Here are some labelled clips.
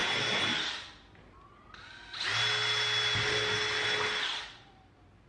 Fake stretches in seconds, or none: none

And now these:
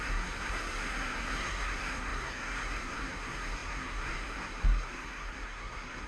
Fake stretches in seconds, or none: 0.0-6.1 (codec, SNAC)

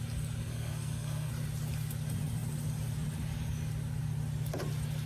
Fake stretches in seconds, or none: 0.4-1.3 (codec, SNAC)

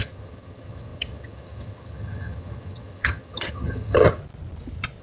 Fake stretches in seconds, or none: 0.0-4.2 (vocoder, HiFi-GAN)

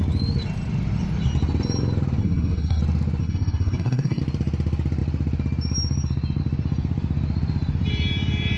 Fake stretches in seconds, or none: 2.2-2.8 (codec, SNAC); 3.2-4.2

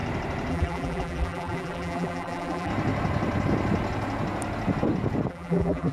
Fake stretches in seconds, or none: 0.5-2.7 (vocoder, BigVGAN v2); 5.3-5.9

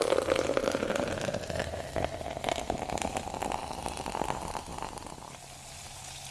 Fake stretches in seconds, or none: none